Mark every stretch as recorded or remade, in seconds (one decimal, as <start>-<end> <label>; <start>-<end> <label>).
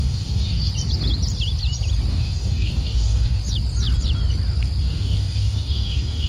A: 0.0-0.7 remade; 0.7-2.1 recorded; 2.1-3.4 remade; 3.4-4.8 recorded; 4.8-6.3 remade